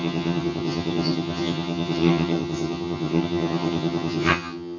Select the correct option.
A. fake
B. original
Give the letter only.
A